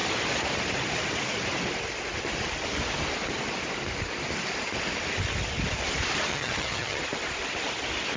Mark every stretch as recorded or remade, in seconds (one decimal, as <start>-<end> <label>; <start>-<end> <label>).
0.0-6.3 recorded; 6.3-7.0 remade; 7.0-8.2 recorded